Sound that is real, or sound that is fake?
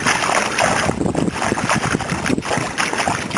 real